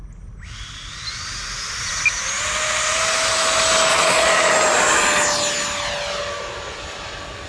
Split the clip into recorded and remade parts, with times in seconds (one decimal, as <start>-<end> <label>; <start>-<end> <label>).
0.0-3.9 recorded; 3.9-4.5 remade; 4.5-7.5 recorded